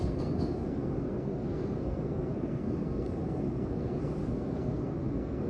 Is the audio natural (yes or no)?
no